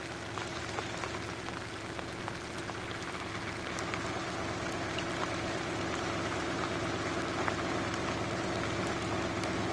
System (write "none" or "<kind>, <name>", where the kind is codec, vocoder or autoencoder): none